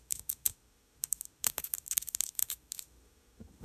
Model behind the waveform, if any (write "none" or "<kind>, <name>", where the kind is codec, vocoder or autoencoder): autoencoder, DAC-VAE